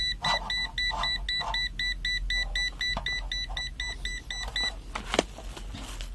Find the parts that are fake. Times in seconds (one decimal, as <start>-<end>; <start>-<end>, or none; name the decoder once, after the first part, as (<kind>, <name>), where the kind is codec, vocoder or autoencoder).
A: none